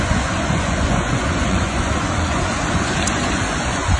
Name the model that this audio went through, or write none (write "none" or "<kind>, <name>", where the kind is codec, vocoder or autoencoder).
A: vocoder, Vocos